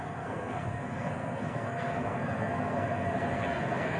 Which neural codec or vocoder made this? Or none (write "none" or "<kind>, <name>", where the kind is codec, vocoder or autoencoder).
codec, SNAC